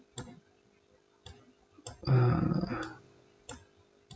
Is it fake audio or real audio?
real